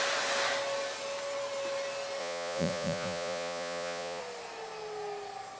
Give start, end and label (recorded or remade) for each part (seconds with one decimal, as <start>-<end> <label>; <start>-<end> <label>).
0.0-2.2 recorded; 2.2-4.2 remade; 4.2-5.6 recorded